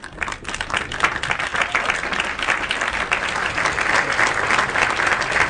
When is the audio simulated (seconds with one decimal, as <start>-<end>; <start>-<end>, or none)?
none